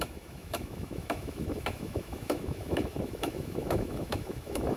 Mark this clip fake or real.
fake